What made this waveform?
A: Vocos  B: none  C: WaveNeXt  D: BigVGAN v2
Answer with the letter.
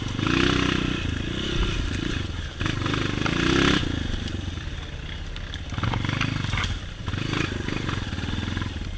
B